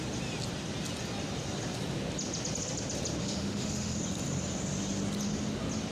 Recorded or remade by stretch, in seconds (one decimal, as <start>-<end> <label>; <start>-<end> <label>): 0.0-3.2 recorded; 3.2-4.0 remade; 4.0-5.9 recorded